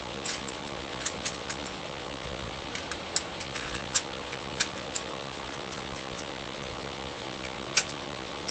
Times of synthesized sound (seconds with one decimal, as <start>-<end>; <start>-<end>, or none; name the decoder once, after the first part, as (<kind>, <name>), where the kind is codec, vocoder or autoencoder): 0.0-2.7 (vocoder, WaveNeXt); 3.4-8.5